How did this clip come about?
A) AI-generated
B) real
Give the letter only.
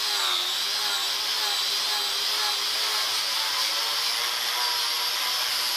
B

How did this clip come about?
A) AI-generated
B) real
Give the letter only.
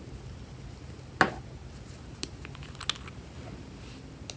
B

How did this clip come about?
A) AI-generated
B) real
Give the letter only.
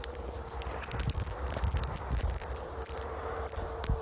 B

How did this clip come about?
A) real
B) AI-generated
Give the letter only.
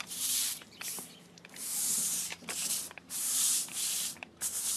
B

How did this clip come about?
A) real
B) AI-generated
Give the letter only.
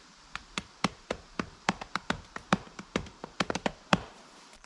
B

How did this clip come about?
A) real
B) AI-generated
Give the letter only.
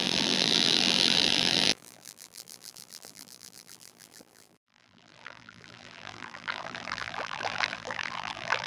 B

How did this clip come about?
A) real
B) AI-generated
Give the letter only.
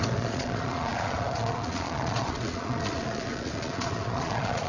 B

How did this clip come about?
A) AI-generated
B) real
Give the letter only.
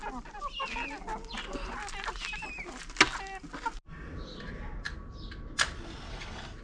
B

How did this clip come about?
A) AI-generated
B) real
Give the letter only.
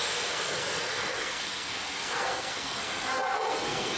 A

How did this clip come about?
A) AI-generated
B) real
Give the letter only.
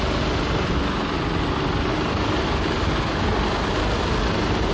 B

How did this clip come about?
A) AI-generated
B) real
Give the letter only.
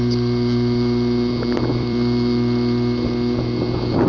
A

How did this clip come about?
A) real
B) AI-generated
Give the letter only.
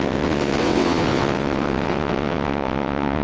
B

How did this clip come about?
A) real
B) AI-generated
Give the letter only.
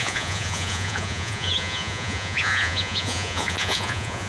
B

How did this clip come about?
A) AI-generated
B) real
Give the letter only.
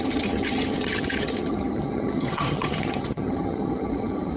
A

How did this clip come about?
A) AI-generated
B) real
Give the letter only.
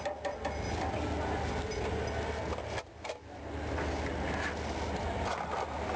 B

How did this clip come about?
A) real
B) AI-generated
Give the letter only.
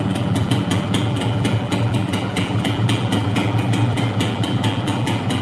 B